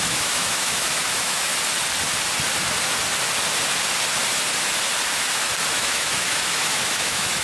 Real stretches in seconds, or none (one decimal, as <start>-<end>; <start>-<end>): 1.5-5.7